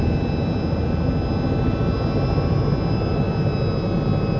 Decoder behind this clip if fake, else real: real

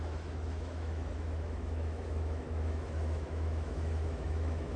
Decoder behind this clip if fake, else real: fake, autoencoder, DAC-VAE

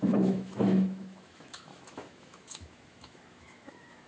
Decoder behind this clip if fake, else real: fake, autoencoder, DAC-VAE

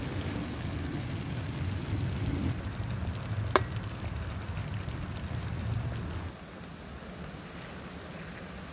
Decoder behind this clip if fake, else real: real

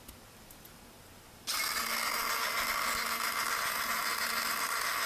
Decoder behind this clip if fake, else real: real